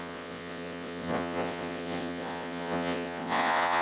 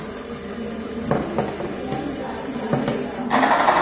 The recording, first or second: second